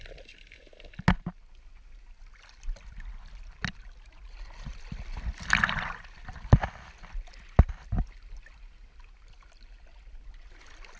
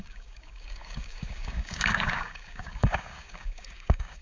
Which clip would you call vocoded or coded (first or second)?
second